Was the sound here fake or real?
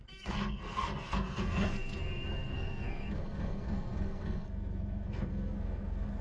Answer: fake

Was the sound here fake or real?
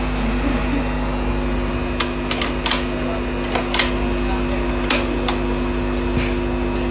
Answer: real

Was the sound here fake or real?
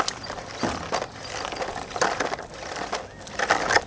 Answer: real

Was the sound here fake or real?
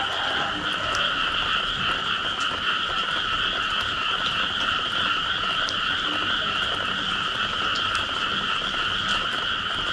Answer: real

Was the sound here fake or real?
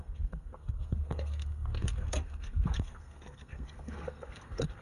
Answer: fake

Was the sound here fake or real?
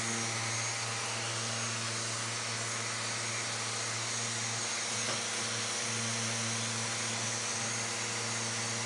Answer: real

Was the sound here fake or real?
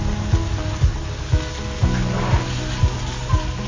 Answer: real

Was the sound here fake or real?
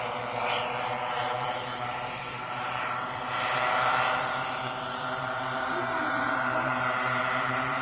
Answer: fake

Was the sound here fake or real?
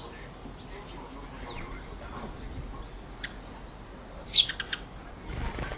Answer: real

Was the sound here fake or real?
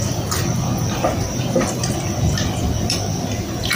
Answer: real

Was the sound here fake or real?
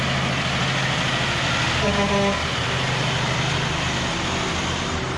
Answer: real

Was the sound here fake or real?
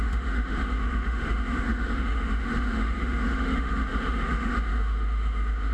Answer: fake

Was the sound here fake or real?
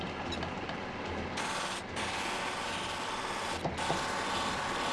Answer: real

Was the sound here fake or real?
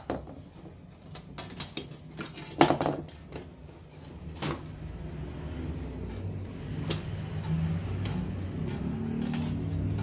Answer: real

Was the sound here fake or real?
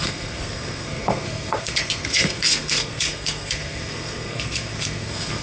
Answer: fake